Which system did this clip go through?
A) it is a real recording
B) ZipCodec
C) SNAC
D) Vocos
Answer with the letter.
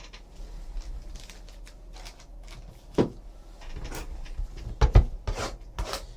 A